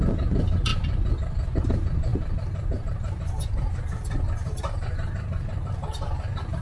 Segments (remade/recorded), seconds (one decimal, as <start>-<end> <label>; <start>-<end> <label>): 0.0-0.7 remade; 0.7-1.6 recorded; 1.6-6.6 remade